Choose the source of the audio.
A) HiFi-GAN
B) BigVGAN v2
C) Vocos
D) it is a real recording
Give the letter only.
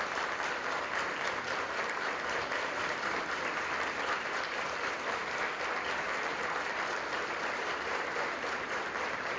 B